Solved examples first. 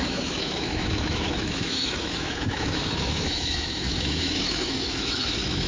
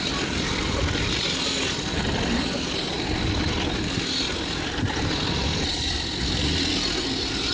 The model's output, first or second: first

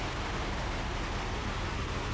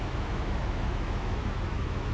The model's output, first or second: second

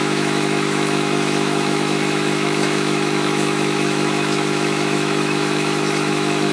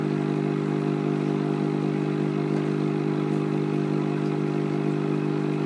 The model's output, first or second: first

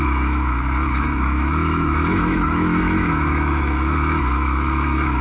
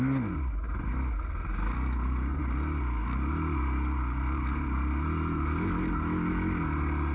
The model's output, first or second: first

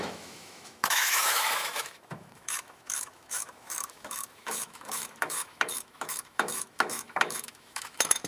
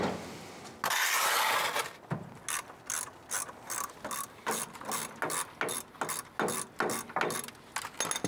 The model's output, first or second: first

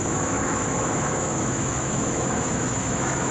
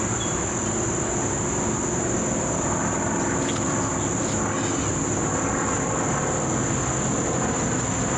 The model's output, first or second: first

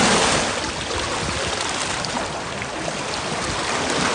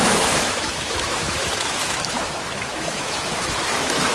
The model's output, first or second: second